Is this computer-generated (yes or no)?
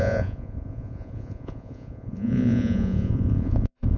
yes